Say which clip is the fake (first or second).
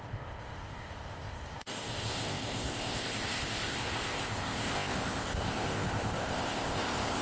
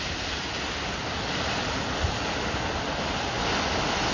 first